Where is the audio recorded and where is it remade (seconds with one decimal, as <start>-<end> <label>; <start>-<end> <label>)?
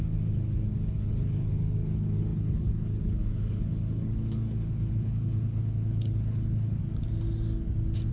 0.0-6.8 remade; 6.8-8.1 recorded